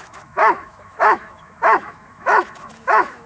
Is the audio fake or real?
fake